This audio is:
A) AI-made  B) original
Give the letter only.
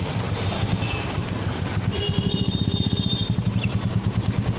A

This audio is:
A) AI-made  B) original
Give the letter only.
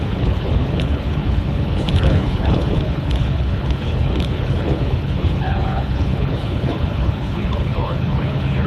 A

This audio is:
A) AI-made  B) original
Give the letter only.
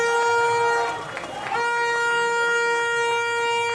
B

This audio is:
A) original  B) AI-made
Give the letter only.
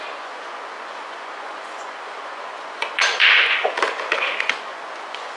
B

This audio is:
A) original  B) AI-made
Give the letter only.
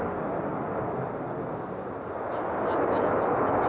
A